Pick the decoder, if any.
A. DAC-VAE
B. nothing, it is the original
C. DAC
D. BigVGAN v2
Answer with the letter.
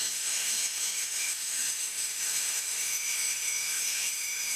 A